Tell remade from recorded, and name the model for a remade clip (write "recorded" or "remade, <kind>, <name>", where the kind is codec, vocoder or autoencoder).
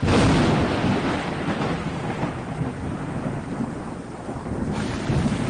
recorded